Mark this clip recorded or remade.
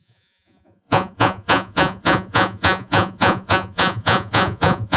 remade